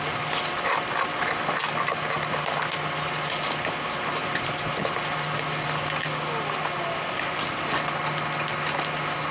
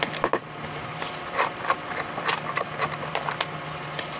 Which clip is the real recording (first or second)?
first